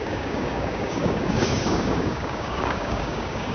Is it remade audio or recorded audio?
remade